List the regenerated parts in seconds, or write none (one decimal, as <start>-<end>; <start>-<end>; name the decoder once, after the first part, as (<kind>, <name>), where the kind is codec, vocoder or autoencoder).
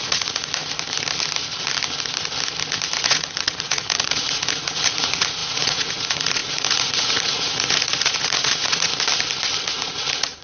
0.0-0.6 (vocoder, Vocos); 3.0-8.9; 9.6-10.4